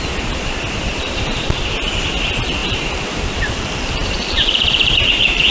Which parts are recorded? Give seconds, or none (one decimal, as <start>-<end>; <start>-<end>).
0.0-0.9; 1.6-2.6; 5.1-5.5